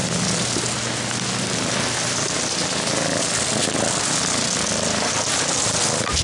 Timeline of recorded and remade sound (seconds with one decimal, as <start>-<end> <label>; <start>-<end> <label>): 0.0-6.2 recorded

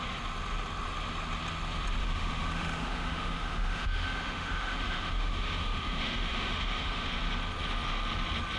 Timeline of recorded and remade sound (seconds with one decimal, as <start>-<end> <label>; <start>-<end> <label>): 0.0-2.0 recorded; 2.0-7.1 remade; 7.1-8.6 recorded